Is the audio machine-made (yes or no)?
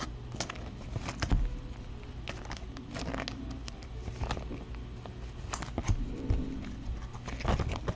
no